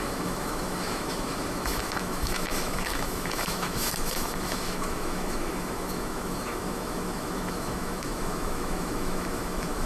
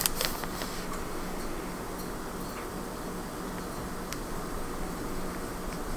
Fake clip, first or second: first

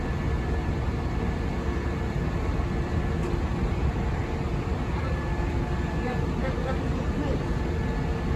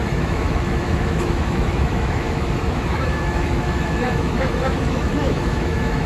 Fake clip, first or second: second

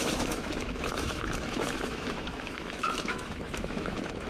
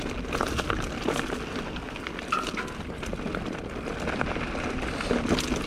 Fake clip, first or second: first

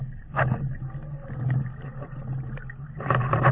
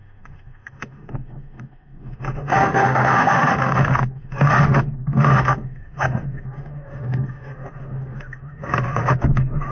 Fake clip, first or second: second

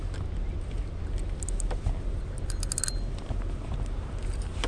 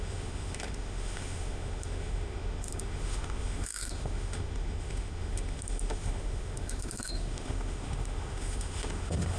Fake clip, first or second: second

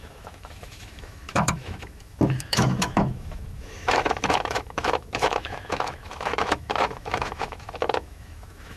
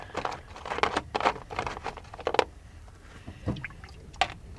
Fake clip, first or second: first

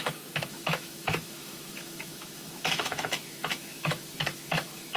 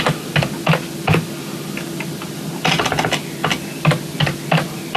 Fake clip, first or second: first